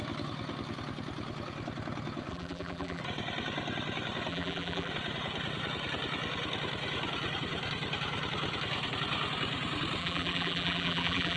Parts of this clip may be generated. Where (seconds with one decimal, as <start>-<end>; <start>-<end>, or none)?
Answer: 2.3-3.0; 4.3-4.9; 10.0-11.4